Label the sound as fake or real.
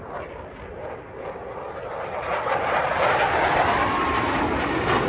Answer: real